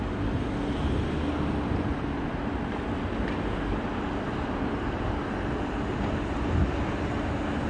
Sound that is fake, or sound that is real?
real